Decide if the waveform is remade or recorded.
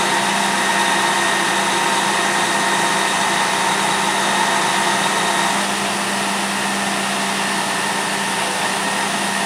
recorded